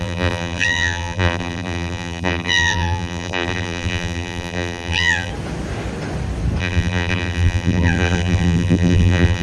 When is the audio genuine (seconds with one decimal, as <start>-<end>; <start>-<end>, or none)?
5.3-6.6